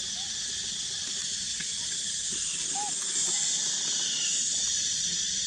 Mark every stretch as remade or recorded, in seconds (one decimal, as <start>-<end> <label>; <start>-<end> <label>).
0.0-5.5 recorded